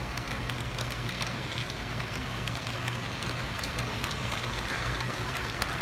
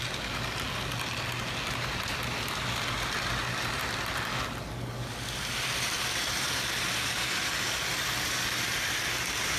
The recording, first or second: second